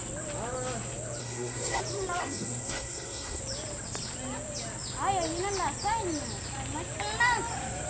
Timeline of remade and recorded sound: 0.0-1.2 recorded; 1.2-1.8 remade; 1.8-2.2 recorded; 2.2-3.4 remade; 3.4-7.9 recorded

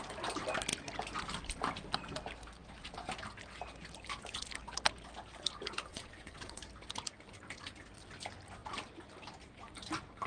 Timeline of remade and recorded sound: 0.0-5.9 recorded; 5.9-6.6 remade; 6.6-10.3 recorded

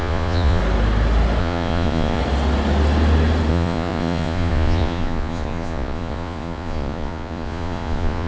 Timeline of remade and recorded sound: 0.0-0.6 remade; 0.6-1.4 recorded; 1.4-2.2 remade; 2.2-3.5 recorded; 3.5-8.3 remade